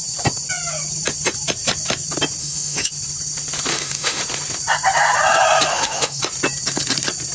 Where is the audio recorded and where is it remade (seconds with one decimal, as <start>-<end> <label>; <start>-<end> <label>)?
0.0-2.4 recorded; 2.4-2.9 remade; 2.9-3.7 recorded; 3.7-4.2 remade; 4.2-5.7 recorded; 5.7-6.2 remade; 6.2-7.3 recorded